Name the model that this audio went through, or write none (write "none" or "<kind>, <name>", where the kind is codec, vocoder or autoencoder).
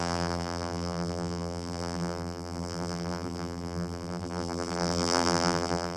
vocoder, BigVGAN v2